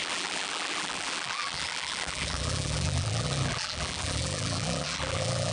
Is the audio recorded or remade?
remade